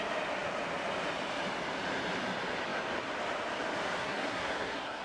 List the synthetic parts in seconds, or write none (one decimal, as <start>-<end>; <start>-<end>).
4.0-5.0